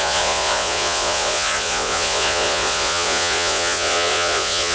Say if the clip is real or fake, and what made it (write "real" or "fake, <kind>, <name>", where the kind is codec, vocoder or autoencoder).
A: fake, vocoder, Vocos